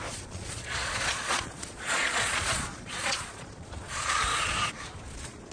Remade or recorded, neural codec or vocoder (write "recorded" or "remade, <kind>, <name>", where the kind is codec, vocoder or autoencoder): remade, vocoder, Vocos